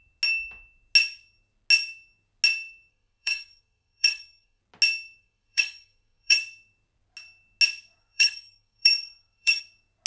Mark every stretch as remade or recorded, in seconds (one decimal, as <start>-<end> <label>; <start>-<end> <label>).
0.0-2.9 recorded; 2.9-4.6 remade; 4.6-5.2 recorded; 5.2-6.4 remade; 6.4-8.0 recorded; 8.0-9.6 remade; 9.6-10.1 recorded